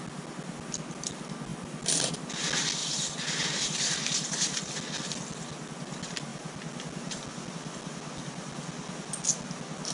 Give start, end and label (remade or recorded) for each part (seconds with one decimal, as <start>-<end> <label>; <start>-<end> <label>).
0.0-2.8 recorded; 2.8-4.7 remade; 4.7-9.9 recorded